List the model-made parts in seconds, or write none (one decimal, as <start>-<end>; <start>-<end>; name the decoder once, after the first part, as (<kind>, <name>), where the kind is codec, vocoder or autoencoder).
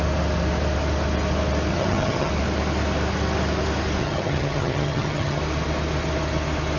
1.7-2.3 (vocoder, HiFi-GAN); 4.0-5.4